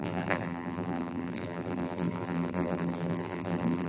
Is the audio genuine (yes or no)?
no